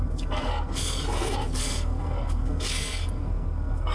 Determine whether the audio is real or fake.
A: fake